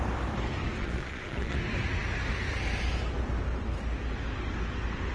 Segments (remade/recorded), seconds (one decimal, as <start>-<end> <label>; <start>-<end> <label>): 0.0-0.8 recorded; 0.8-1.6 remade; 1.6-5.1 recorded

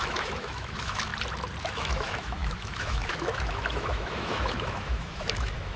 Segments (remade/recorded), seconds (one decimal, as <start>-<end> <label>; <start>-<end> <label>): 0.0-1.1 remade; 1.1-1.6 recorded; 1.6-5.8 remade

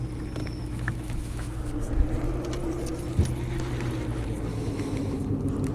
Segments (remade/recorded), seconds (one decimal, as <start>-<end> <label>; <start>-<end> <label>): 0.0-0.4 recorded; 0.4-1.6 remade; 1.6-4.5 recorded; 4.5-5.2 remade; 5.2-5.7 recorded

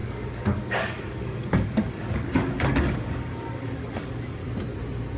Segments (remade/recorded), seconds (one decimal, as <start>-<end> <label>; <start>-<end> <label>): 0.0-4.4 remade; 4.4-5.2 recorded

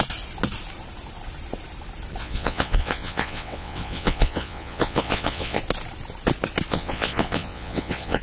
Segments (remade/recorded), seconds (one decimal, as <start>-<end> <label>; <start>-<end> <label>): 0.0-2.2 recorded; 2.2-5.6 remade; 5.6-6.7 recorded; 6.7-8.2 remade

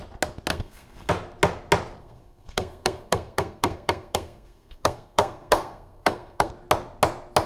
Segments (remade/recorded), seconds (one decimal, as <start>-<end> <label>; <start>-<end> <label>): 0.0-0.5 recorded; 0.5-1.1 remade; 1.1-2.0 recorded; 2.0-6.5 remade; 6.5-7.5 recorded

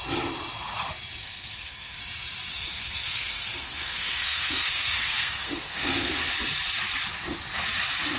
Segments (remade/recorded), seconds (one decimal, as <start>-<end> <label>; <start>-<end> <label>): 0.0-1.2 recorded; 1.2-2.0 remade; 2.0-2.5 recorded; 2.5-6.3 remade; 6.3-8.2 recorded